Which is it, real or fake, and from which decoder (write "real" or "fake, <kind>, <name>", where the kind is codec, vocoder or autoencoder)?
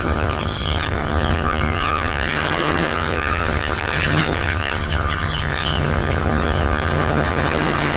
fake, vocoder, HiFi-GAN